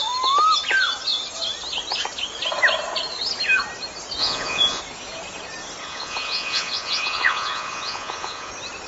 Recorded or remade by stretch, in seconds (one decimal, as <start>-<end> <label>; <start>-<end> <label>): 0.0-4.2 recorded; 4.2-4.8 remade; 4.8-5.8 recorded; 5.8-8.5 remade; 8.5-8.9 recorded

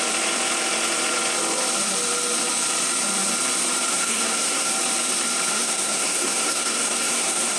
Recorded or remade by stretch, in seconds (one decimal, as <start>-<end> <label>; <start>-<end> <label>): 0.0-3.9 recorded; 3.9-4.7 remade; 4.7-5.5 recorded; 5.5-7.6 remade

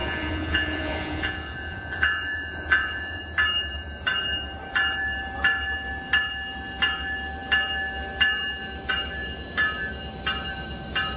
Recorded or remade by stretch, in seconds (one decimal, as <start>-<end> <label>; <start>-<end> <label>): 0.0-3.2 remade; 3.2-11.2 recorded